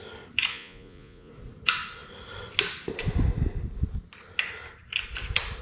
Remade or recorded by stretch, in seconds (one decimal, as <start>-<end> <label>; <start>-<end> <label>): 0.0-0.5 recorded; 0.5-1.3 remade; 1.3-5.6 recorded